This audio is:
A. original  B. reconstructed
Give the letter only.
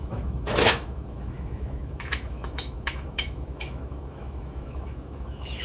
B